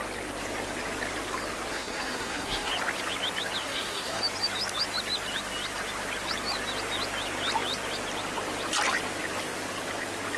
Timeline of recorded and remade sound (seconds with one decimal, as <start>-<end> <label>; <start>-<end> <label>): 0.0-1.7 recorded; 1.7-2.7 remade; 2.7-3.6 recorded; 3.6-4.2 remade; 4.2-10.4 recorded